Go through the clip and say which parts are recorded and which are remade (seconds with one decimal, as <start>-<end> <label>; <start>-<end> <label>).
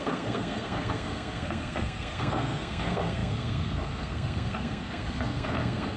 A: 0.0-6.0 remade